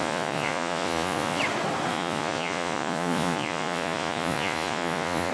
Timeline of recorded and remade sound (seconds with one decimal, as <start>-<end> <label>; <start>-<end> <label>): 0.0-1.4 remade; 1.4-1.9 recorded; 1.9-5.3 remade